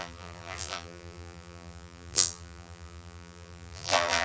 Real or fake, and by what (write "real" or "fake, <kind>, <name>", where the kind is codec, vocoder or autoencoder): fake, vocoder, BigVGAN v2